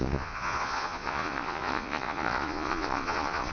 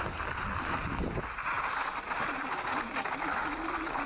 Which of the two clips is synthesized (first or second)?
first